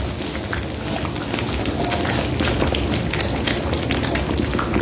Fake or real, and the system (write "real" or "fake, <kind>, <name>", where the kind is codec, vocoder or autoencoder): real